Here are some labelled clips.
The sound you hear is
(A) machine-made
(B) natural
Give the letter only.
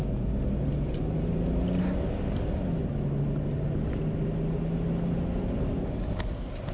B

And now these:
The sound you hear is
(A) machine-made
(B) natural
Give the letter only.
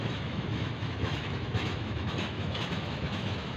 A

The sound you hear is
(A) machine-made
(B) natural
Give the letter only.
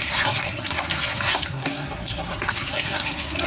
A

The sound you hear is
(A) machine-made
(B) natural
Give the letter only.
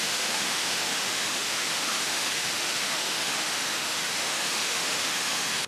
A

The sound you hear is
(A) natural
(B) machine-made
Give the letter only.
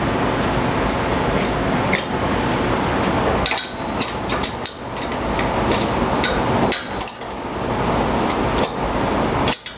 A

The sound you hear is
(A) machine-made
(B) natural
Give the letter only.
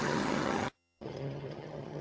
A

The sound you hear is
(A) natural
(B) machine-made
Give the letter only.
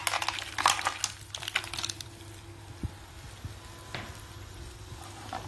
A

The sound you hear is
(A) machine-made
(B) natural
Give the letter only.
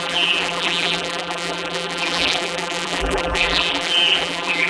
A